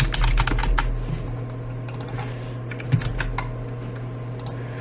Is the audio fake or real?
real